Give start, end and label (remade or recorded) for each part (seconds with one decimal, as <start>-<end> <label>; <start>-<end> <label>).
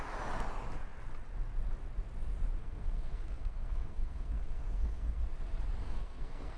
0.0-2.6 recorded; 2.6-5.2 remade; 5.2-5.8 recorded; 5.8-6.6 remade